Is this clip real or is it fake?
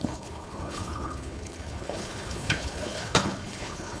fake